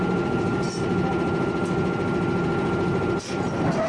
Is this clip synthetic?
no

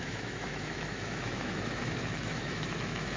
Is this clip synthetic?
yes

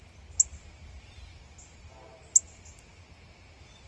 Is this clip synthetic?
no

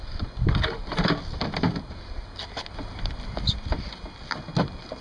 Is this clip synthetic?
no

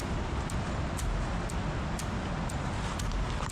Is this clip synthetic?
no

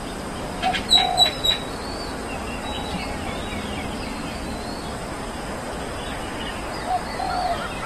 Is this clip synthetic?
no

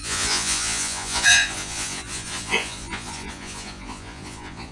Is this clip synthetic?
yes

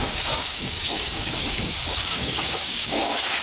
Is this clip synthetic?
yes